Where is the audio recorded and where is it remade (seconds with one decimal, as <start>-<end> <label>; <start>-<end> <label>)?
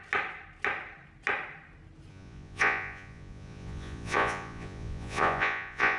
0.0-2.1 recorded; 2.1-6.0 remade